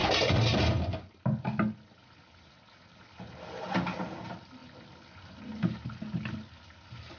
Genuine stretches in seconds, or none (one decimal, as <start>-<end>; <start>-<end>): 0.0-7.2